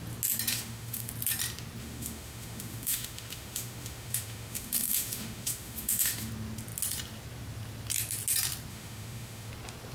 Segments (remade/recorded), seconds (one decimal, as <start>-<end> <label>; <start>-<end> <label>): 0.0-0.5 recorded; 0.5-1.1 remade; 1.1-1.8 recorded; 1.8-6.3 remade; 6.3-8.7 recorded; 8.7-9.5 remade; 9.5-9.9 recorded